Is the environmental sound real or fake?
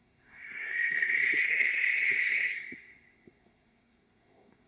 fake